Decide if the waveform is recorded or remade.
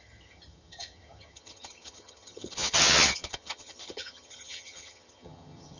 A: remade